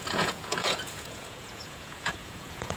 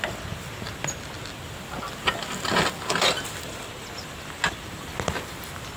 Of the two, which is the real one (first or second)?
second